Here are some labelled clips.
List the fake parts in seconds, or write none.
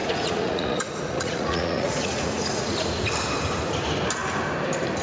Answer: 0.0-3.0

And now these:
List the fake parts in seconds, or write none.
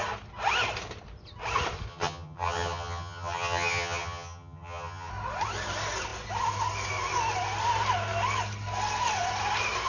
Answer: 1.9-5.1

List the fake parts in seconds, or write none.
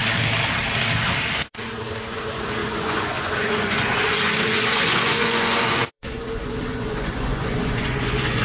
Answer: 1.3-8.4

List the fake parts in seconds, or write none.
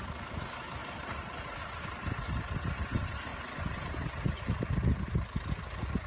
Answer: none